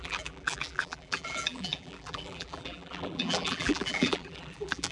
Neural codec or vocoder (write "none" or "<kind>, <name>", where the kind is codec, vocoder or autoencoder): vocoder, BigVGAN v2